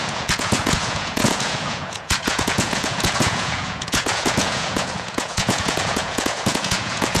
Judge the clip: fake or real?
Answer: fake